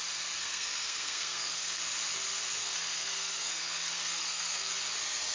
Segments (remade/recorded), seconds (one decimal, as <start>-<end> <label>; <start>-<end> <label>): 0.0-0.4 recorded; 0.4-1.8 remade; 1.8-2.6 recorded; 2.6-4.7 remade; 4.7-5.3 recorded